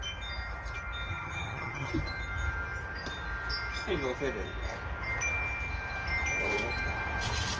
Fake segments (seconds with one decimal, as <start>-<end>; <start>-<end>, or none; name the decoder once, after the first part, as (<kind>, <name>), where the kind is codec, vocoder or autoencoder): 1.1-1.9 (vocoder, HiFi-GAN)